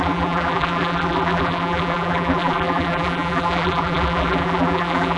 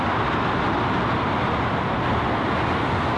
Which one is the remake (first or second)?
first